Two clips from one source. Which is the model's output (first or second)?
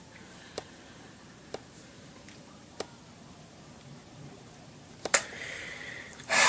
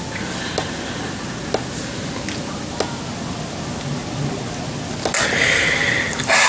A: first